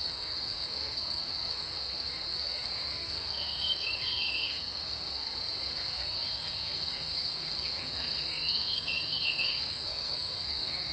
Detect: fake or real fake